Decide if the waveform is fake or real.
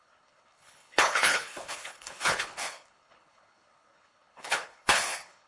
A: fake